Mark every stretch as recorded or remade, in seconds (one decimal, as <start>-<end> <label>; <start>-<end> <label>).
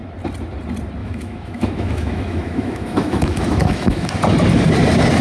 0.0-1.0 recorded; 1.0-4.1 remade; 4.1-5.2 recorded